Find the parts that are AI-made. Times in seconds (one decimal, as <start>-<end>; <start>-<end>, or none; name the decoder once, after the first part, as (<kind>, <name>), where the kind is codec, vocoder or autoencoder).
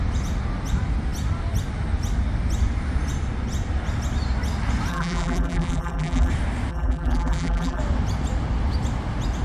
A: 4.9-6.3 (vocoder, BigVGAN v2); 6.7-7.8